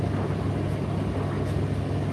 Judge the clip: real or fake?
real